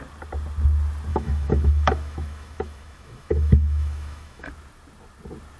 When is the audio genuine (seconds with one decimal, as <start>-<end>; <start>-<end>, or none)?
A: 0.0-1.1; 4.5-5.6